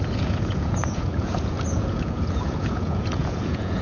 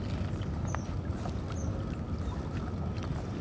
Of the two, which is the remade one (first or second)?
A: first